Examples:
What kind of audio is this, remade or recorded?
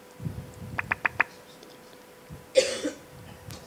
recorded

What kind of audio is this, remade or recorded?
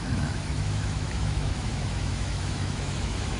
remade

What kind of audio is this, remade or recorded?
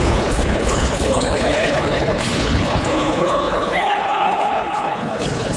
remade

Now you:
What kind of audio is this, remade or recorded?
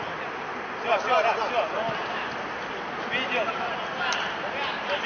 recorded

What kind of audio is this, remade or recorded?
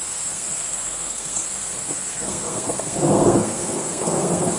remade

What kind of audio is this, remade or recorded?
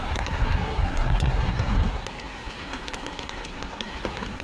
remade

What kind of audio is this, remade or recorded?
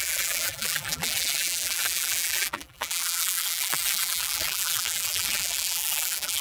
remade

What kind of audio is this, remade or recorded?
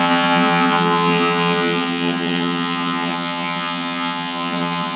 remade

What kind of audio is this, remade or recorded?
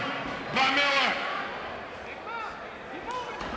recorded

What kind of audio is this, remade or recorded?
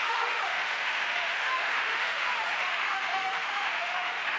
remade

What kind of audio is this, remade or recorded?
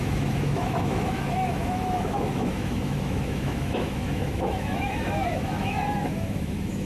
remade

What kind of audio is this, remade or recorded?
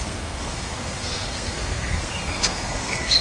remade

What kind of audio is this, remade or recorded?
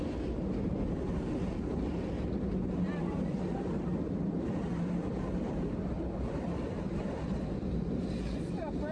recorded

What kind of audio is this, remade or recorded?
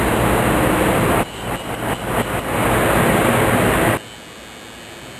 recorded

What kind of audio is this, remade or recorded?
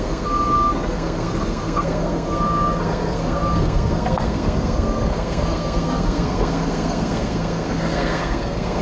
remade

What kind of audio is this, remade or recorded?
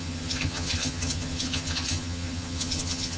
remade